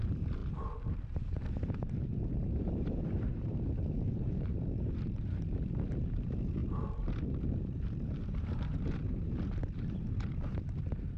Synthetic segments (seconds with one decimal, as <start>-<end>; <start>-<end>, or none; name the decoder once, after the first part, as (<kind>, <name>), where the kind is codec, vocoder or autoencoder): 0.0-6.6 (vocoder, BigVGAN v2); 7.5-11.2